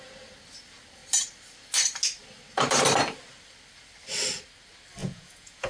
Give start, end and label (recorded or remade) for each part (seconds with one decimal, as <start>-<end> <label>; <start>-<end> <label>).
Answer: 0.0-5.0 recorded; 5.0-5.7 remade